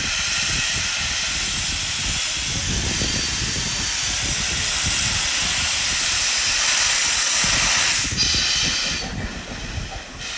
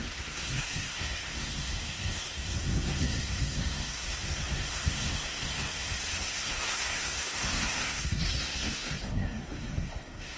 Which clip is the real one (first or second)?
first